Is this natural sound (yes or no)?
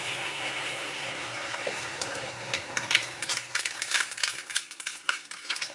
no